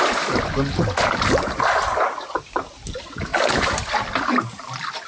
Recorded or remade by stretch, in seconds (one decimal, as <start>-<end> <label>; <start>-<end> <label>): 0.0-5.1 recorded